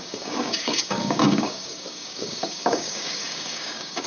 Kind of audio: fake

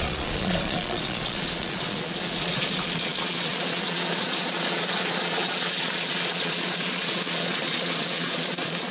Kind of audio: fake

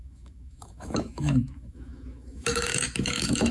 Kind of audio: fake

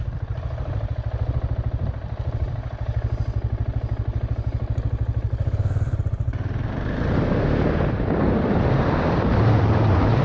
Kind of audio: fake